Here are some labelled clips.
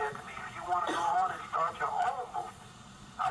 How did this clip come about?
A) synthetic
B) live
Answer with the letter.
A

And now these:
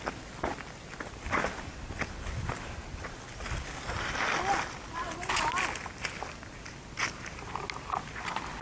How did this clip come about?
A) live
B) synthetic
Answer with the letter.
A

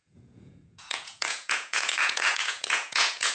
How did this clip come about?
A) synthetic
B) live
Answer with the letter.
A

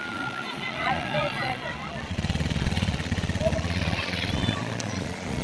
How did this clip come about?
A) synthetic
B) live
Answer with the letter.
A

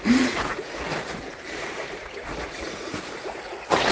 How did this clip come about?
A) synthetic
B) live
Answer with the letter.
A